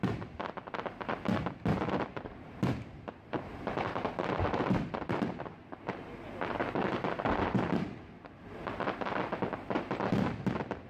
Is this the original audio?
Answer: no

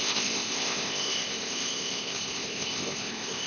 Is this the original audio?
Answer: no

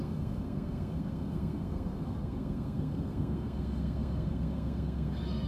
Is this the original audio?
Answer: no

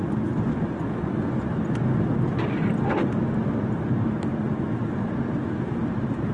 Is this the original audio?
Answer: yes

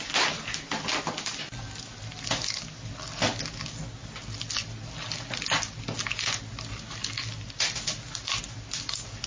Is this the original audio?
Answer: yes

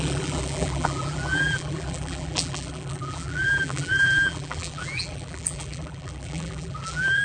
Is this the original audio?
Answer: no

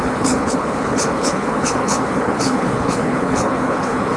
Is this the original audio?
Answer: no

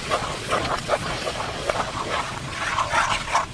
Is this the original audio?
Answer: no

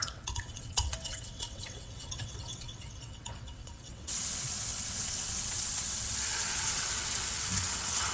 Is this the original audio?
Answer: no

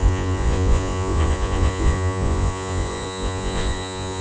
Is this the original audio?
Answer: no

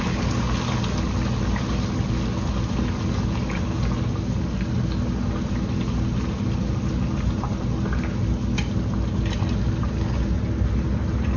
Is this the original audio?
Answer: yes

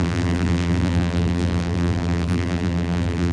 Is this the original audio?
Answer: no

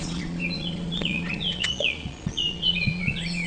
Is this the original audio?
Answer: no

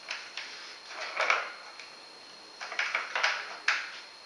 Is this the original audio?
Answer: yes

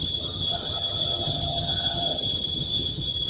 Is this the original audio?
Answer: no